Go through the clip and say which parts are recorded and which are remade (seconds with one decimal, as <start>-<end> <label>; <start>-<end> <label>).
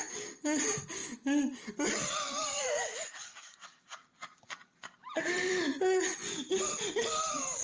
0.0-1.0 recorded; 1.0-5.6 remade; 5.6-7.6 recorded